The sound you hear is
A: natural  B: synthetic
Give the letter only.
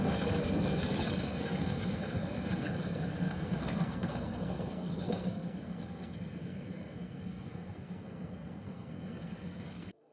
B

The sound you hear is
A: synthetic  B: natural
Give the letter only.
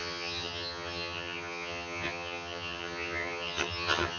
A